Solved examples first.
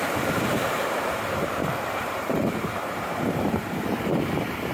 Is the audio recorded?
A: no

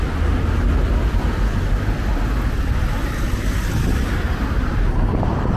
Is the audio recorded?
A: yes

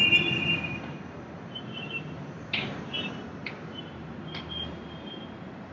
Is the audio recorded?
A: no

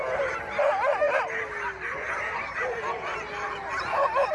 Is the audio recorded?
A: yes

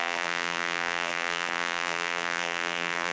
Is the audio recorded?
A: no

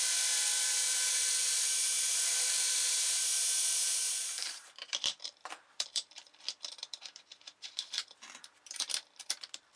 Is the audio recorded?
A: no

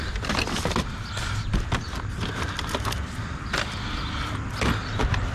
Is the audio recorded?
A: yes